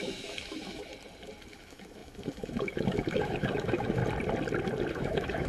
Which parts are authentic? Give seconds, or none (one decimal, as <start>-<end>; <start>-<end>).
0.9-1.5; 4.0-4.9